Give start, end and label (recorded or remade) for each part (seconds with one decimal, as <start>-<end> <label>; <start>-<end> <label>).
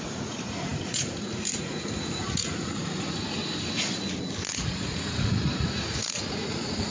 0.0-3.4 remade; 3.4-4.5 recorded; 4.5-6.9 remade